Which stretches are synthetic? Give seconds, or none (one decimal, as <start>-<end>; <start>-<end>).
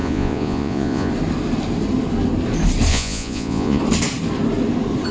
0.0-1.1; 2.9-3.8